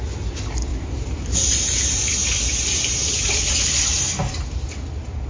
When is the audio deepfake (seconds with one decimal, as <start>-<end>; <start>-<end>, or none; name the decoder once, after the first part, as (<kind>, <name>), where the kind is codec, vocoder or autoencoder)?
0.7-1.8 (vocoder, BigVGAN v2)